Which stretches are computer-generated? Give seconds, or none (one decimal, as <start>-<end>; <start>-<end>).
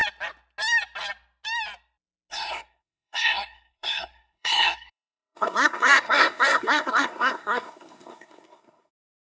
2.3-9.3